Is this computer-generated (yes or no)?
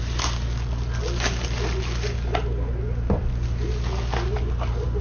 no